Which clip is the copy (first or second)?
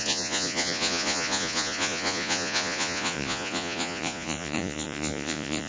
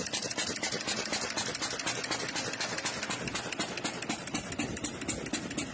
first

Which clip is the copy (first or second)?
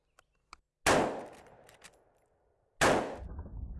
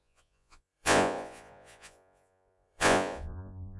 second